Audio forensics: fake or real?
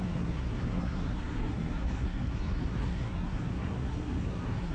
fake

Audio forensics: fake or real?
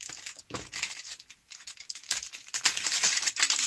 fake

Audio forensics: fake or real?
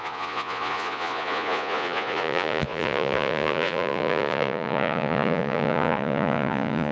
fake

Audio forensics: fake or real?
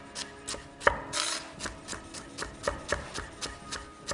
real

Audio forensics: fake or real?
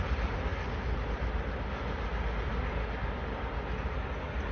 real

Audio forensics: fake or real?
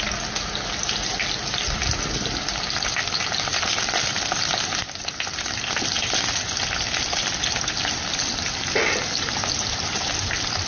real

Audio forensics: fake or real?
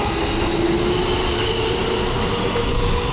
real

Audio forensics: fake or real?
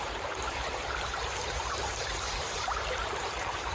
fake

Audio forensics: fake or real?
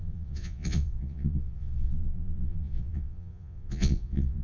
fake